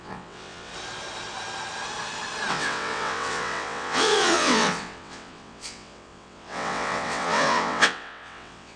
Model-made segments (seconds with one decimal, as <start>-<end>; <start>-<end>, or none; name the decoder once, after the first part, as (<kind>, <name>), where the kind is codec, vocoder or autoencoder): 0.0-0.7 (vocoder, WaveNeXt); 2.5-8.8